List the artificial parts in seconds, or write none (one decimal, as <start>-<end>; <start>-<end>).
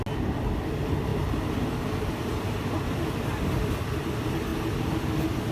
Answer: 1.1-4.0